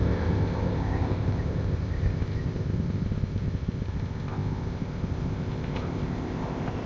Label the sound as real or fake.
fake